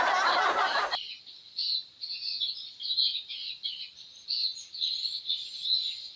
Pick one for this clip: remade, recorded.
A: recorded